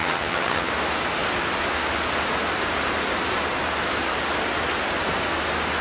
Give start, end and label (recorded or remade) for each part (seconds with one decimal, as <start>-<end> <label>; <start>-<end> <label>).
0.0-0.7 remade; 0.7-5.8 recorded